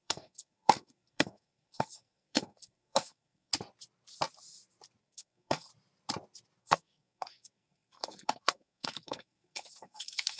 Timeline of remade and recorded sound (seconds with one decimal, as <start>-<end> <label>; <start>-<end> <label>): 0.0-3.5 remade; 3.5-5.0 recorded; 5.0-5.7 remade; 5.7-6.6 recorded; 6.6-10.4 remade